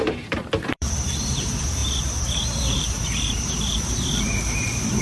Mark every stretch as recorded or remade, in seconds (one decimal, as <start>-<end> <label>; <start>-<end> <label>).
0.0-5.0 remade